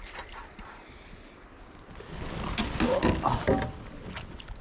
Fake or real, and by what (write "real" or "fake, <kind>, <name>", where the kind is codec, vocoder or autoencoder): real